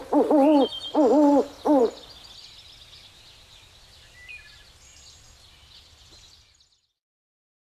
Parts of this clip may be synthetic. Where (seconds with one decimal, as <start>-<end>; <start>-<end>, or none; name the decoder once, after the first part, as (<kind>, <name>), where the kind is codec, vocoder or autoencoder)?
none